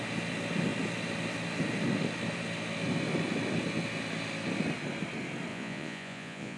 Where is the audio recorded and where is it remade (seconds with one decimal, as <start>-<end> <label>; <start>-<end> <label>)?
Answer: 0.0-5.5 recorded; 5.5-6.6 remade